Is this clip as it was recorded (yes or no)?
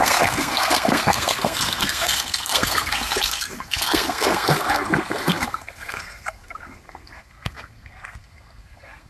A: no